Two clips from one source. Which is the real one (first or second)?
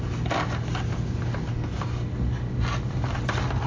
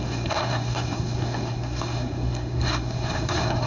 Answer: first